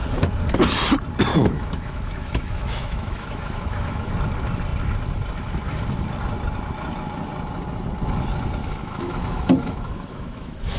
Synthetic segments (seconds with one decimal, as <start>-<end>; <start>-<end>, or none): 1.3-4.1; 8.6-10.8